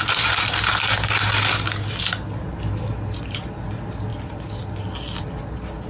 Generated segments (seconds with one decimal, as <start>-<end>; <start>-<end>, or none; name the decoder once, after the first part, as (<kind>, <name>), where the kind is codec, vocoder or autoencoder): none